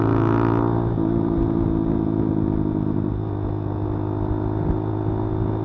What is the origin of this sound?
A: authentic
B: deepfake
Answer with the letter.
A